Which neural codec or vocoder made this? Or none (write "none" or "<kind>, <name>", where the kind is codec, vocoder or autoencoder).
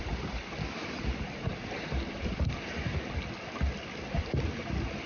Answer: none